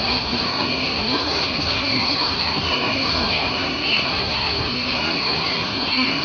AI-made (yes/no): yes